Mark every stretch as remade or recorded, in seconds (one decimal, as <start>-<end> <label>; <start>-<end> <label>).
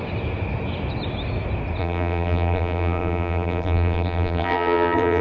0.0-1.8 recorded; 1.8-5.2 remade